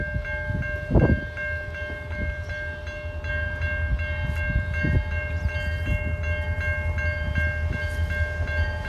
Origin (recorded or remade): recorded